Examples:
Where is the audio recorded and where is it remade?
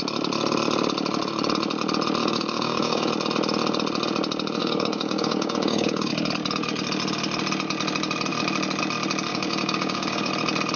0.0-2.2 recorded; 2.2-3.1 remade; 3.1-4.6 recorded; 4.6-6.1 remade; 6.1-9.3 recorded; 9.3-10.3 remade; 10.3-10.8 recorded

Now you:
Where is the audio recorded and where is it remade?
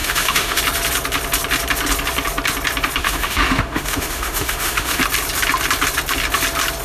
0.0-0.6 remade; 0.6-3.0 recorded; 3.0-5.0 remade; 5.0-6.8 recorded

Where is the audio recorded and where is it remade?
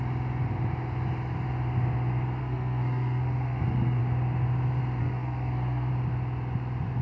0.0-2.4 recorded; 2.4-4.0 remade; 4.0-5.0 recorded; 5.0-5.9 remade; 5.9-7.0 recorded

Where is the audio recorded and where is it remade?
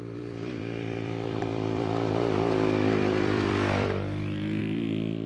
0.0-4.6 remade; 4.6-5.3 recorded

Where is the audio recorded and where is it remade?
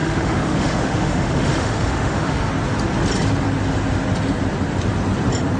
0.0-2.5 remade; 2.5-5.6 recorded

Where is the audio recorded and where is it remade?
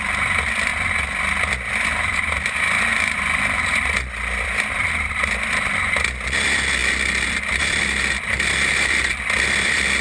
0.0-0.7 remade; 0.7-1.7 recorded; 1.7-10.0 remade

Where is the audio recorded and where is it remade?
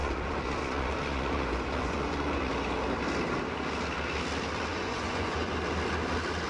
0.0-2.5 remade; 2.5-4.7 recorded; 4.7-5.5 remade; 5.5-6.5 recorded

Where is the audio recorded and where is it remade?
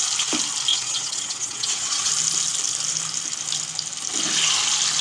0.0-0.7 recorded; 0.7-2.1 remade; 2.1-5.0 recorded